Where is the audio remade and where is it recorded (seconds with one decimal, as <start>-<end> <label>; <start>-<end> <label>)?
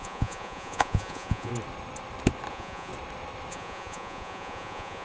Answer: 0.0-1.5 remade; 1.5-2.5 recorded; 2.5-2.9 remade; 2.9-3.5 recorded; 3.5-5.0 remade